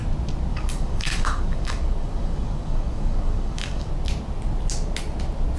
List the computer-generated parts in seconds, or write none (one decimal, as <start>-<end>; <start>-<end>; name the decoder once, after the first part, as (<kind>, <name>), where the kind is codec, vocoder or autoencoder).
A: 0.5-3.9 (codec, DAC)